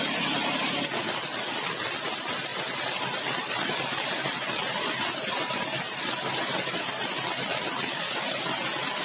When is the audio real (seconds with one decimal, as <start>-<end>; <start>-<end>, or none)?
0.0-9.0